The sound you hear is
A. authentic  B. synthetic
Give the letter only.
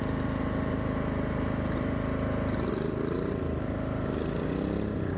A